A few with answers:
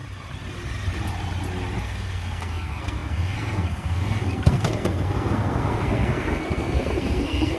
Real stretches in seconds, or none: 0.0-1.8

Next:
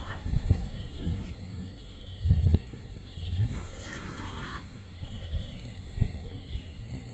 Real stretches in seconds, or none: none

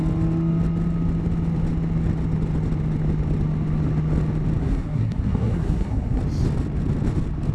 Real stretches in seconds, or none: 0.0-4.6; 6.2-7.5

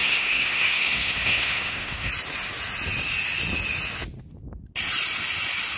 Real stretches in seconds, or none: 2.1-5.8

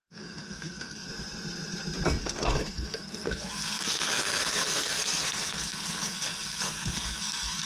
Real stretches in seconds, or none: 1.1-2.2